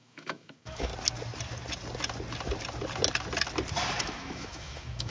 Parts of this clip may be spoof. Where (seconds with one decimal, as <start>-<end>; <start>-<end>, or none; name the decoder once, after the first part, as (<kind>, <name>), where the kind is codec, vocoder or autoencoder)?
0.0-0.9 (autoencoder, DAC-VAE); 4.0-5.1